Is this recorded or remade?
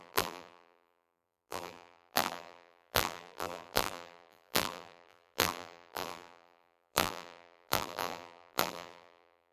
remade